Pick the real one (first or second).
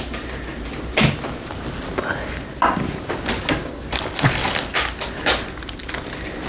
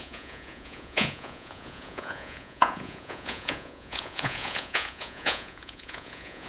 first